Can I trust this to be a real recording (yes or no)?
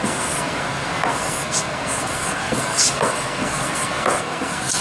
no